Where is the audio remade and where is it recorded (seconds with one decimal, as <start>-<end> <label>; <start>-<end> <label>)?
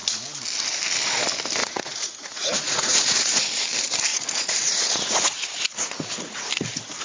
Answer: 0.0-1.6 recorded; 1.6-3.4 remade; 3.4-4.1 recorded; 4.1-6.5 remade; 6.5-7.0 recorded